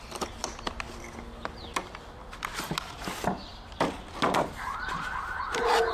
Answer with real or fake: real